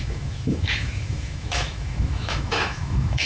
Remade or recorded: remade